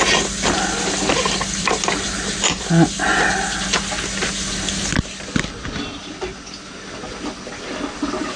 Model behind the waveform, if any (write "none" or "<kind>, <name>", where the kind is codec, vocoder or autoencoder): none